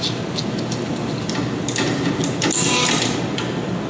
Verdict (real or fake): real